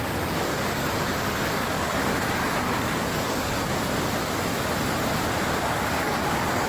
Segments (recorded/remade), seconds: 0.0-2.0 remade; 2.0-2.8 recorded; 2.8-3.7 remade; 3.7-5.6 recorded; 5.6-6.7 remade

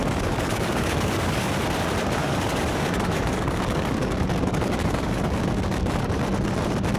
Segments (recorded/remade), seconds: 0.0-1.5 remade; 1.5-2.2 recorded; 2.2-6.1 remade; 6.1-7.0 recorded